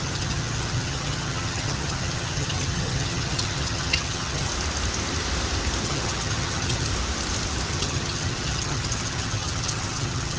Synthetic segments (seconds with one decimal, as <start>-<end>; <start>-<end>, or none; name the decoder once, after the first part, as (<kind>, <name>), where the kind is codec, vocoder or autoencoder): 0.0-4.5 (vocoder, HiFi-GAN); 5.8-6.9; 7.7-10.4